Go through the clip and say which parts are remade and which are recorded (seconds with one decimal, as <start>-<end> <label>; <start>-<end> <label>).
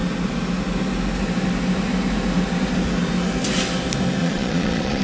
0.0-4.2 recorded; 4.2-5.0 remade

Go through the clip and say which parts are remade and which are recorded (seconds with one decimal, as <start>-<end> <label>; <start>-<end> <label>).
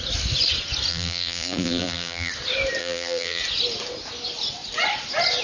0.0-0.9 recorded; 0.9-2.3 remade; 2.3-2.8 recorded; 2.8-3.4 remade; 3.4-5.4 recorded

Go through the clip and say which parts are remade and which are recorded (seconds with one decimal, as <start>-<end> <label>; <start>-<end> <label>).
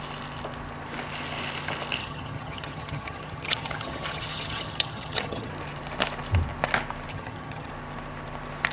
0.0-2.0 recorded; 2.0-5.5 remade; 5.5-7.1 recorded; 7.1-7.7 remade; 7.7-8.7 recorded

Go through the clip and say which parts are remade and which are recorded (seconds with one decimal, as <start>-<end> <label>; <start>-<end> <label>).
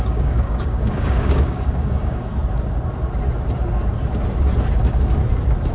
0.0-2.3 remade; 2.3-5.7 recorded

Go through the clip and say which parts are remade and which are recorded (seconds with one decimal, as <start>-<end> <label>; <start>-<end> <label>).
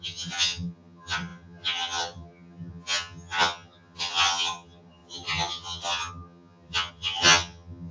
0.0-7.9 remade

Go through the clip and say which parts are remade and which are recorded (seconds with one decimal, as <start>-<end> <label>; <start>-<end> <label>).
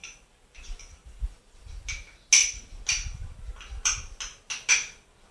0.0-1.7 remade; 1.7-2.4 recorded; 2.4-3.5 remade; 3.5-5.3 recorded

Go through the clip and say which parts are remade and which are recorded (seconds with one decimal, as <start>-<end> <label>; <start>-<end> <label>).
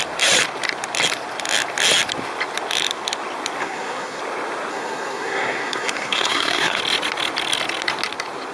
0.0-3.6 recorded; 3.6-4.2 remade; 4.2-4.7 recorded; 4.7-6.8 remade; 6.8-8.5 recorded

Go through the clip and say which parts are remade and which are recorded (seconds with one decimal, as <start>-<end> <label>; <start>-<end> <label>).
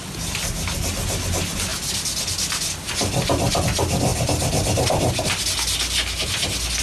0.0-6.8 recorded